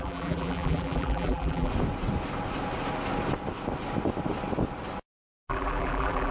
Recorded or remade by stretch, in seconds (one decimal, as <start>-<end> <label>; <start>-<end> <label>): 0.0-1.7 remade; 1.7-5.5 recorded; 5.5-6.3 remade